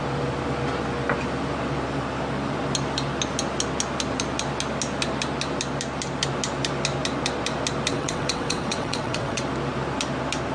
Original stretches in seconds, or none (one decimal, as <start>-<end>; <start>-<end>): 0.0-7.9; 9.4-10.5